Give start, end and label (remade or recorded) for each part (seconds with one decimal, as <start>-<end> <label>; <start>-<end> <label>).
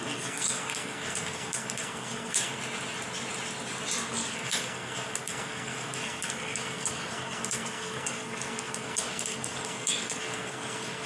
0.0-2.6 remade; 2.6-4.1 recorded; 4.1-11.1 remade